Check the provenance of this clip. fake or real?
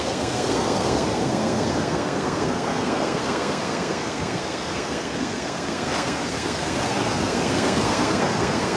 fake